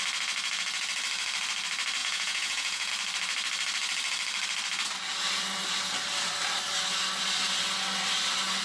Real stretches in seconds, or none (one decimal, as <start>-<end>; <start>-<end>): 0.0-2.0; 2.9-8.6